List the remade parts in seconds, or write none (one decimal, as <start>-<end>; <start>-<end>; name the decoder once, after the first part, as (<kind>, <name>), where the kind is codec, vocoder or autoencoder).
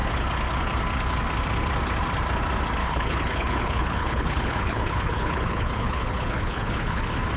2.8-7.0 (codec, HILCodec)